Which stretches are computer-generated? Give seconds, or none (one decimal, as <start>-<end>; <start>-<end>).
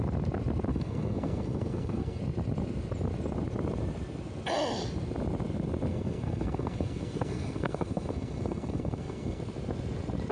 0.7-2.2; 5.9-9.4